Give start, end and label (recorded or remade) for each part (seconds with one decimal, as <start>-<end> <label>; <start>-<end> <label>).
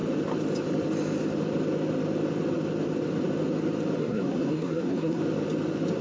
0.0-4.0 recorded; 4.0-5.2 remade; 5.2-6.0 recorded